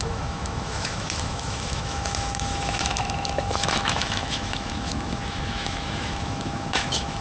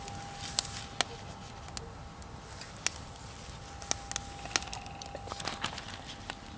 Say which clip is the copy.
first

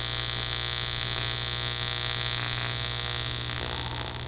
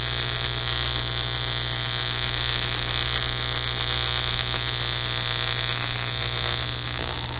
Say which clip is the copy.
second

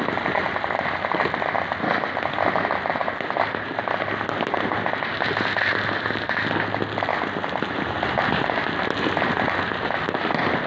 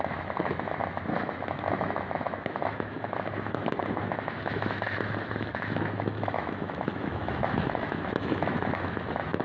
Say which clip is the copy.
second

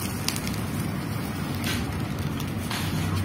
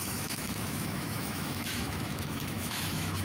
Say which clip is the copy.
second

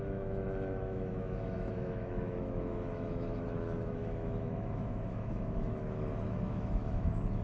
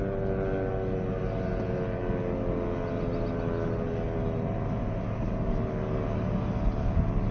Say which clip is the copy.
first